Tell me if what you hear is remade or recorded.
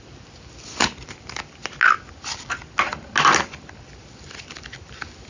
recorded